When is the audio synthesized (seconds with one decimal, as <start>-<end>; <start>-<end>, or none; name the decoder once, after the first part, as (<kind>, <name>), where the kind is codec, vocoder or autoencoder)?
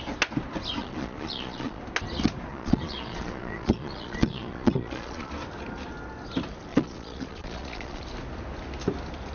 0.8-1.8 (vocoder, Vocos); 2.5-5.3; 6.7-8.0